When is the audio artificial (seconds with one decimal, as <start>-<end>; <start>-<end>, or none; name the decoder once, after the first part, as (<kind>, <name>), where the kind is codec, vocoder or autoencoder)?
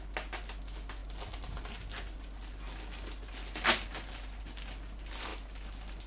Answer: none